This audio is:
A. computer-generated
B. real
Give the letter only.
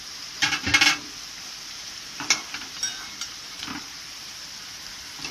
B